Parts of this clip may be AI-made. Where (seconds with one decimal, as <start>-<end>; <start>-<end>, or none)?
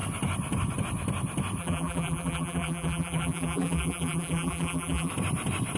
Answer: 1.6-5.1